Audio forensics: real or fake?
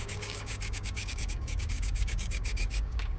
fake